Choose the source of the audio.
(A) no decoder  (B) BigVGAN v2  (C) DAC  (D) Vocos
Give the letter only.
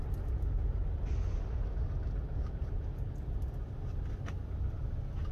A